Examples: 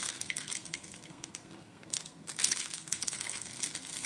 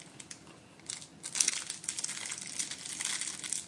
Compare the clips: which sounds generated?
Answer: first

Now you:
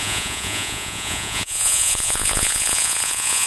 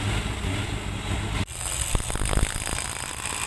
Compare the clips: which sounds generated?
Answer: first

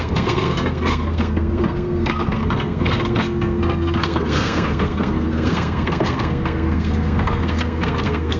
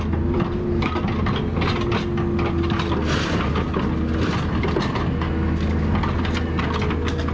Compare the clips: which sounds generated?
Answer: first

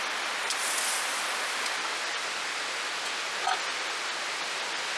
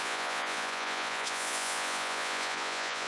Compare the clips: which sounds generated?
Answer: second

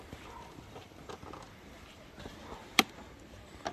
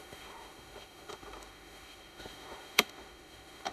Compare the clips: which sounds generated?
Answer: second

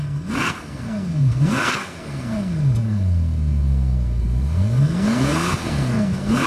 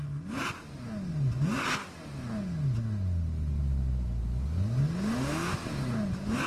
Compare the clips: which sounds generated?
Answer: first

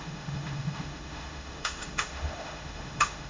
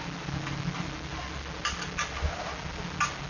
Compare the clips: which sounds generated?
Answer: first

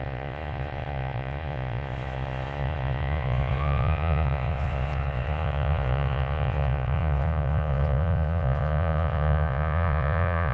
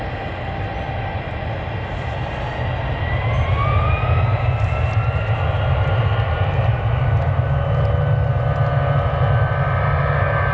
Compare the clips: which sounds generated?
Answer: first